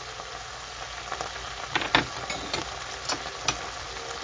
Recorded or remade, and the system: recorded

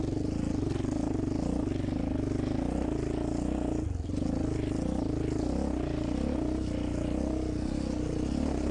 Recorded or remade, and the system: recorded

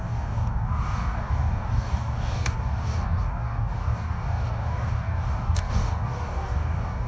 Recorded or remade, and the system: remade, codec, DAC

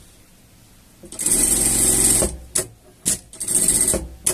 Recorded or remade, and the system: recorded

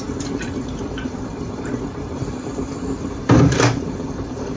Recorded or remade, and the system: remade, vocoder, BigVGAN v2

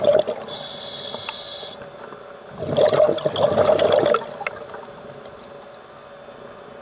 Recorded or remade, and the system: recorded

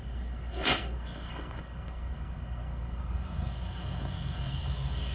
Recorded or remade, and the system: remade, codec, SNAC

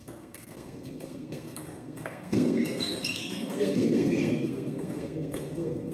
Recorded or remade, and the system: remade, codec, SNAC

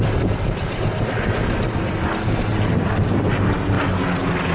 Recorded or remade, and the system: recorded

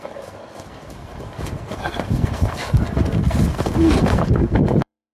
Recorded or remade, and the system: remade, codec, SNAC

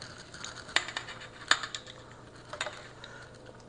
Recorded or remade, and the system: recorded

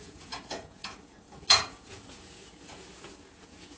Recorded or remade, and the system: remade, vocoder, Vocos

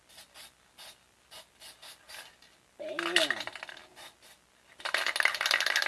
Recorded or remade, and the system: recorded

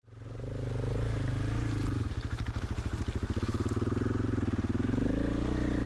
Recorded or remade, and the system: recorded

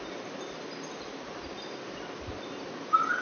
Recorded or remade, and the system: recorded